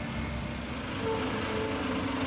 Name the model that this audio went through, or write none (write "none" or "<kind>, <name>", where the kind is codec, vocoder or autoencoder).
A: none